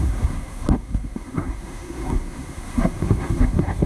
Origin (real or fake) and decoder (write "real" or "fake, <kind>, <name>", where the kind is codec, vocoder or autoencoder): fake, codec, SNAC